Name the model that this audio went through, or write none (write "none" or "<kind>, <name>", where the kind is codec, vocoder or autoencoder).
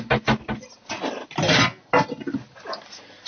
none